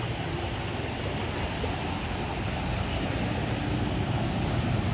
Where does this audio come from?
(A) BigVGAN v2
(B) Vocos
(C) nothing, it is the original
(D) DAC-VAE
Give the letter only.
C